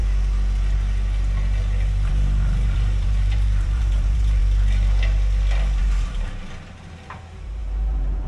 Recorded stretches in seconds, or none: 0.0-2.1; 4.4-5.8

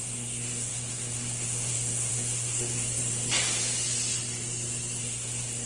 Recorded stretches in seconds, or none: 3.0-5.0

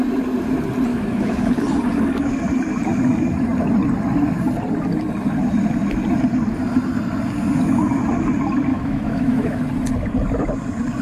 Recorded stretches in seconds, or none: 0.0-0.9; 1.5-8.7; 9.6-11.0